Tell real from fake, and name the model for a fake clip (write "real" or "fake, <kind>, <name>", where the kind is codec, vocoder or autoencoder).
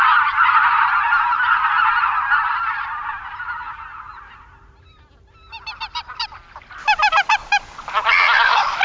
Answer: real